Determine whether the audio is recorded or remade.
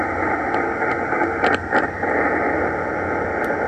recorded